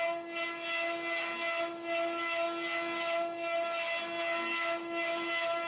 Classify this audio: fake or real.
real